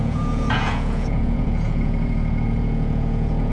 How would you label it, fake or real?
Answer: fake